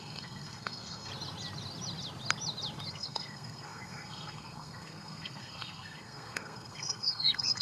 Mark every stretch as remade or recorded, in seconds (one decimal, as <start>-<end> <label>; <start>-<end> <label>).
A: 0.0-1.1 remade; 1.1-2.9 recorded; 2.9-7.6 remade